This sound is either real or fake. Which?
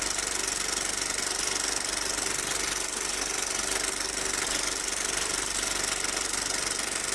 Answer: real